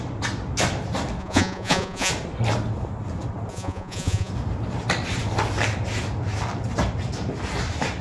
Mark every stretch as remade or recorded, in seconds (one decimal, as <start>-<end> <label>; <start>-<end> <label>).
0.0-1.2 recorded; 1.2-2.1 remade; 2.1-3.5 recorded; 3.5-4.3 remade; 4.3-8.0 recorded